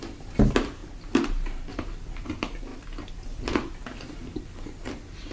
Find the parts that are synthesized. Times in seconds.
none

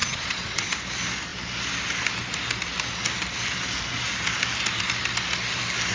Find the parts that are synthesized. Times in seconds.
0.0-0.7